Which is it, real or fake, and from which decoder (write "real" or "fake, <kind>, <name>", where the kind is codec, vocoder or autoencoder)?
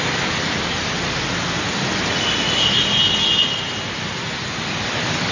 real